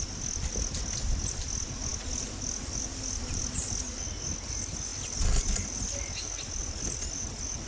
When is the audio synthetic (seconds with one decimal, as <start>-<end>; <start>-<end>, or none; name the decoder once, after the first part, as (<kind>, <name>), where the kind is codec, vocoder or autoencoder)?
none